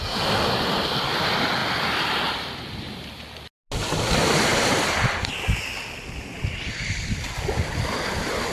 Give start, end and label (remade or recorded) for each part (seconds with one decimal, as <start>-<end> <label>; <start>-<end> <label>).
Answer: 0.0-8.5 recorded